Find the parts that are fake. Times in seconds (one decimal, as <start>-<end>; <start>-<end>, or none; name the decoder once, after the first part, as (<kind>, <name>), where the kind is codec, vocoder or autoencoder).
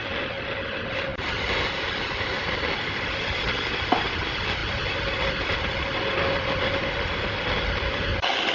none